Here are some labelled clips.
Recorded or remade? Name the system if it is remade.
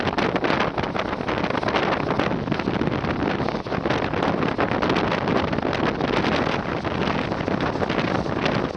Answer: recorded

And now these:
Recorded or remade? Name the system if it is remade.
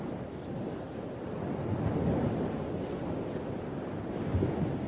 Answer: recorded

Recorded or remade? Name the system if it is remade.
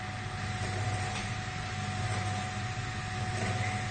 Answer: recorded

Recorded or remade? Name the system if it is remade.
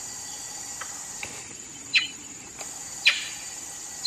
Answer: recorded